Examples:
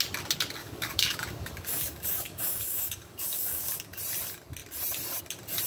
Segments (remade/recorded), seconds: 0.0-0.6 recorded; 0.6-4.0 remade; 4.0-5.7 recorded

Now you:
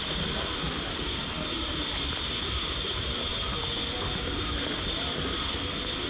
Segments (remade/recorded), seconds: 0.0-6.1 recorded

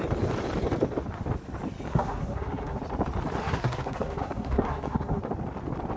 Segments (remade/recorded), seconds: 0.0-1.9 recorded; 1.9-2.8 remade; 2.8-3.4 recorded; 3.4-5.2 remade; 5.2-6.0 recorded

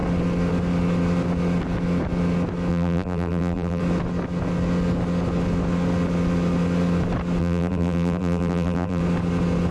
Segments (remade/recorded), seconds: 0.0-2.7 recorded; 2.7-3.8 remade; 3.8-7.4 recorded; 7.4-9.0 remade; 9.0-9.7 recorded

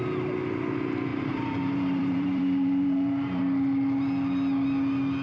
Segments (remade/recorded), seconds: 0.0-1.1 recorded; 1.1-3.4 remade; 3.4-5.2 recorded

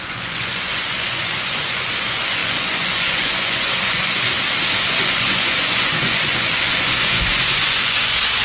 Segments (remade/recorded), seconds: 0.0-4.3 remade; 4.3-4.9 recorded; 4.9-8.4 remade

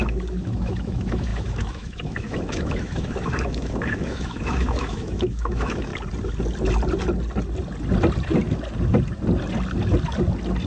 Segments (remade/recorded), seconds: 0.0-5.9 remade; 5.9-10.7 recorded